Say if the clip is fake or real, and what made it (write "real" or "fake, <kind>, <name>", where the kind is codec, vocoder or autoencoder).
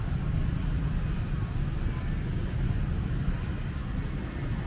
real